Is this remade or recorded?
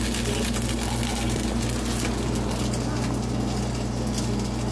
recorded